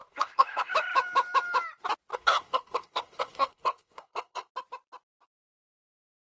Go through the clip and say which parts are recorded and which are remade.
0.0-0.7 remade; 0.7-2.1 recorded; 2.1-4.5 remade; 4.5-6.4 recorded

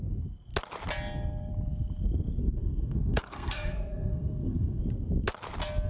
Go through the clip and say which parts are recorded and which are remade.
0.0-2.4 recorded; 2.4-4.8 remade; 4.8-5.9 recorded

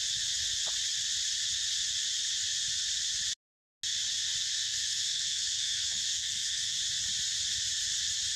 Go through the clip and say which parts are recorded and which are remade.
0.0-4.5 recorded; 4.5-6.8 remade; 6.8-8.4 recorded

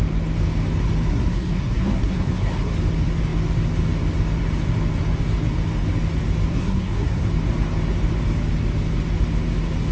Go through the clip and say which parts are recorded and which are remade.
0.0-1.1 recorded; 1.1-2.7 remade; 2.7-6.5 recorded; 6.5-7.3 remade; 7.3-9.9 recorded